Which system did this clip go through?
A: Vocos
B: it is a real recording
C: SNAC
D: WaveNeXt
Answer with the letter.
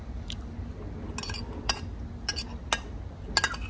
B